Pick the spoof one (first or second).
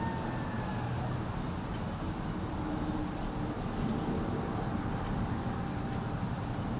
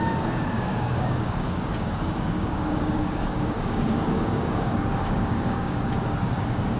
second